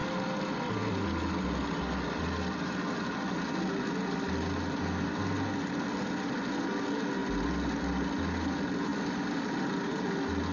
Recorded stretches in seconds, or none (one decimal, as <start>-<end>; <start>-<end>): 0.0-10.5